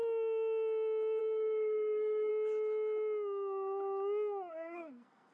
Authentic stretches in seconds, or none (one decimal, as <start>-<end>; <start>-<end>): 0.0-1.2; 2.3-4.5